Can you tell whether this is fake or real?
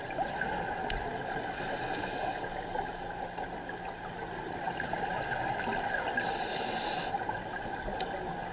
real